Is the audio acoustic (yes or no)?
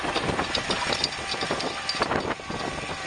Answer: yes